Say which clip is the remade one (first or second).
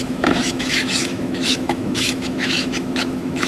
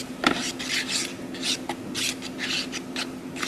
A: first